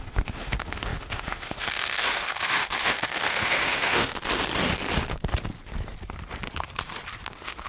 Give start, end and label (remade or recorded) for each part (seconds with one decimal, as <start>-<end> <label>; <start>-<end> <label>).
0.0-4.2 remade; 4.2-7.3 recorded; 7.3-7.7 remade